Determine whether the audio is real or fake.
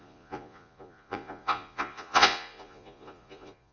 fake